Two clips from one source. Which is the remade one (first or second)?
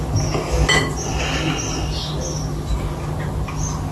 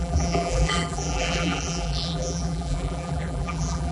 second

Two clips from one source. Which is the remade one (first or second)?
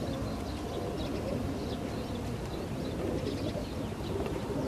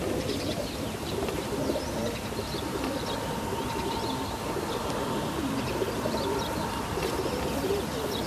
second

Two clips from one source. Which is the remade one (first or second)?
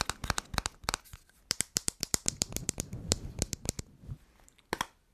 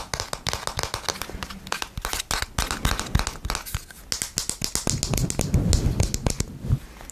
first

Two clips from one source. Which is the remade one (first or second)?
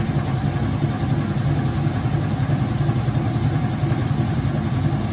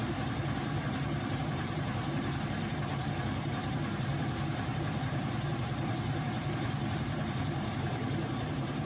second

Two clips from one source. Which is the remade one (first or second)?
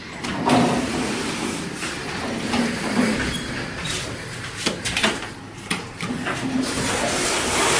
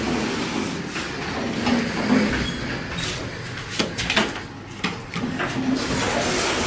first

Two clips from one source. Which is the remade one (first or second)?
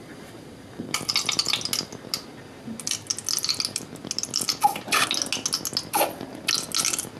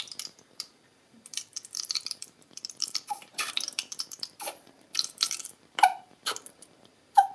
second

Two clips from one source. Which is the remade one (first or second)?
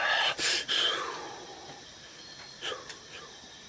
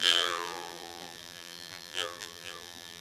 second